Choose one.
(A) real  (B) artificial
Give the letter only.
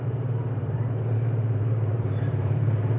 B